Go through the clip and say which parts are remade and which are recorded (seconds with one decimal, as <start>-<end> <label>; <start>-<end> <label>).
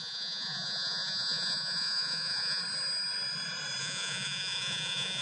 0.0-2.6 remade; 2.6-3.8 recorded; 3.8-5.2 remade